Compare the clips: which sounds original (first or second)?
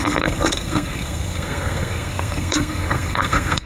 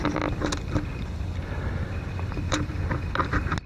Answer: second